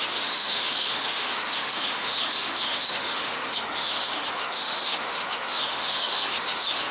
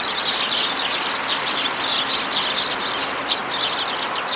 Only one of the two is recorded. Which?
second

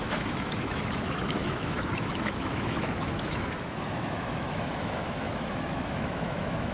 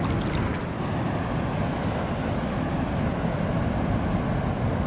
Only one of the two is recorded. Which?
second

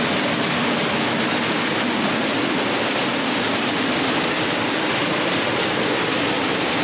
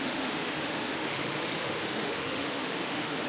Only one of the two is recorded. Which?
first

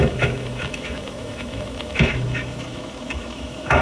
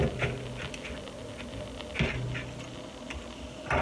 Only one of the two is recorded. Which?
second